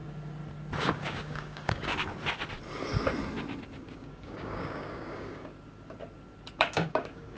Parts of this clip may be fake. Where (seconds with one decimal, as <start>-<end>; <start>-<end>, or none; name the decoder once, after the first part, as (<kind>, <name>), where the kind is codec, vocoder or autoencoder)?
0.8-1.9 (codec, DAC); 3.8-5.5; 6.5-7.4